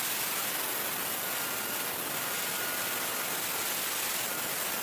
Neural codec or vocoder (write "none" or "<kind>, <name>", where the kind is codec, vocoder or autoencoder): none